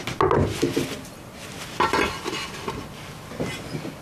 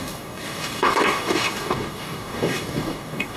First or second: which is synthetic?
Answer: second